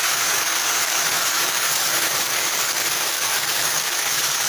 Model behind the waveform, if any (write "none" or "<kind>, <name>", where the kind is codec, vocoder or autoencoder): codec, DAC